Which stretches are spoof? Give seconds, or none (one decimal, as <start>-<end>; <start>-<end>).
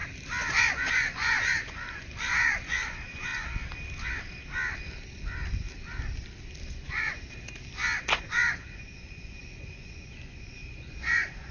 0.6-3.3; 6.7-7.2; 8.0-11.5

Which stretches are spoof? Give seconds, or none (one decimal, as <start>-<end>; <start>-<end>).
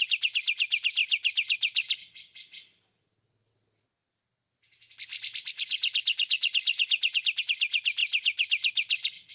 none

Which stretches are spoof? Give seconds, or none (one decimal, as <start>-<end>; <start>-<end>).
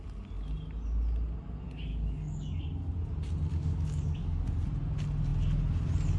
1.9-2.6; 3.5-4.5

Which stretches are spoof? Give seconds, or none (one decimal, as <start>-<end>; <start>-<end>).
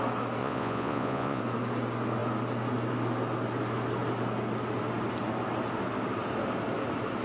0.4-1.4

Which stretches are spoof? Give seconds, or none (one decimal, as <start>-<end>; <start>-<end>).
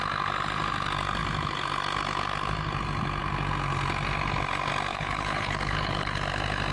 4.9-6.2